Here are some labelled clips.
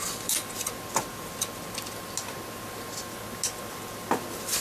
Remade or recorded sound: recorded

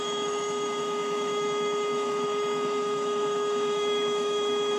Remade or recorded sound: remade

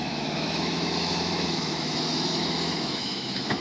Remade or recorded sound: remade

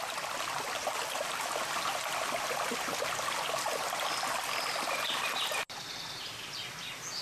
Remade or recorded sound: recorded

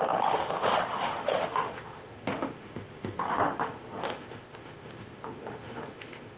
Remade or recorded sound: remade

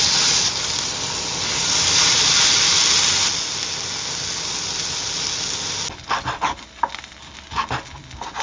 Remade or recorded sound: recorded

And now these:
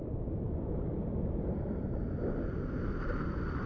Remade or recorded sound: recorded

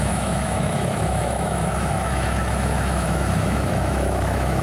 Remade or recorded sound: remade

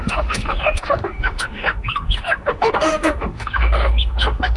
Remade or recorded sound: remade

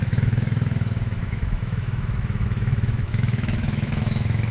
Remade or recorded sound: remade